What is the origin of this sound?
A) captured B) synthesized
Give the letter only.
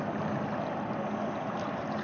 A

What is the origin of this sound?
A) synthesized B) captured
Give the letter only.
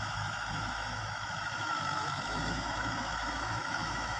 A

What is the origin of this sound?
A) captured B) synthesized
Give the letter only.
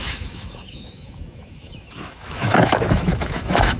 B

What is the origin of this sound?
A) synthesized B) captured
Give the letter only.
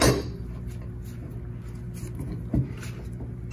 B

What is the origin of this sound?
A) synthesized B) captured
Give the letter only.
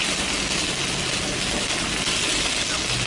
B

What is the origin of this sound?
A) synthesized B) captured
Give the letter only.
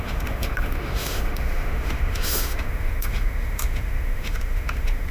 A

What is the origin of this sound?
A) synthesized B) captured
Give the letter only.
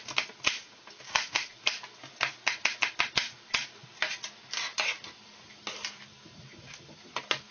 B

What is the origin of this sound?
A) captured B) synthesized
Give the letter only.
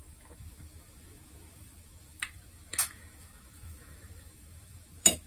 B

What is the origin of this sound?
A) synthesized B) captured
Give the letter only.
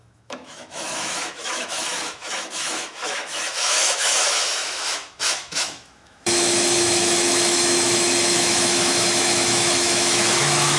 A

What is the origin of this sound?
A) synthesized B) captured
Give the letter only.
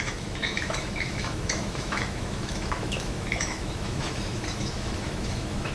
A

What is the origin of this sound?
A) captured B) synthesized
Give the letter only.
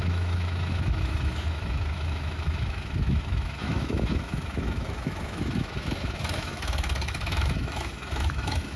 B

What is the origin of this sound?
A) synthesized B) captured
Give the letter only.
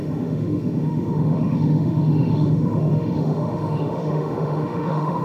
A